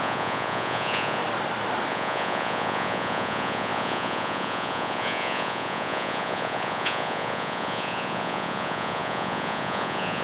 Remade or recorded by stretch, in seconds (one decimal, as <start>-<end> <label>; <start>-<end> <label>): 0.0-1.2 remade; 1.2-1.9 recorded; 1.9-10.2 remade

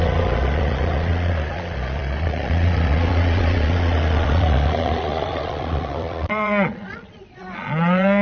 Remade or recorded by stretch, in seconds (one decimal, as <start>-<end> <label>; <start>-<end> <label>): 0.0-8.2 remade

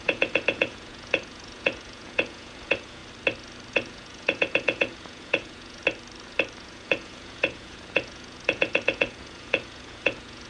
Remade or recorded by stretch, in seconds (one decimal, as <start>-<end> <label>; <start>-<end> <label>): 0.0-3.0 remade; 3.0-3.7 recorded; 3.7-5.8 remade; 5.8-6.6 recorded; 6.6-10.5 remade

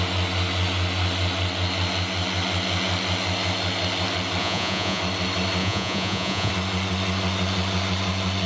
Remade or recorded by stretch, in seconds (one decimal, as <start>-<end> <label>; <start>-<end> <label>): 0.0-4.4 recorded; 4.4-5.0 remade; 5.0-5.6 recorded; 5.6-6.5 remade; 6.5-8.5 recorded